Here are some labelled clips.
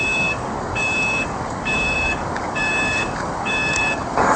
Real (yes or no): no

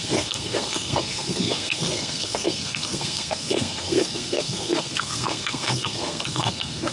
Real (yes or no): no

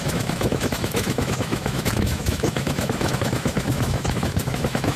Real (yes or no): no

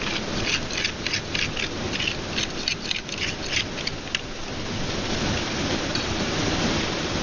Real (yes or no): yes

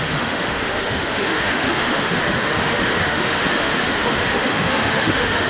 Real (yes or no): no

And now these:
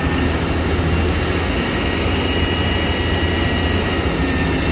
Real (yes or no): yes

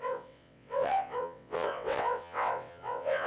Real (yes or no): no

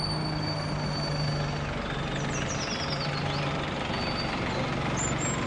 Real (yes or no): yes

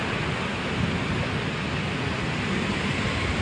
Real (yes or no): yes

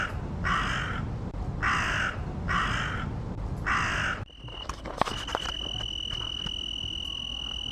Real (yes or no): yes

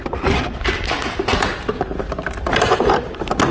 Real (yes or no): yes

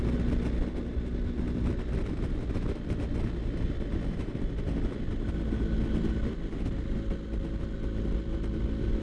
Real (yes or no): yes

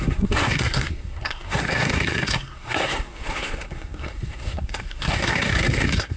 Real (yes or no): no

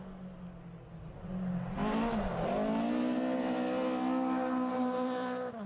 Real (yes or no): yes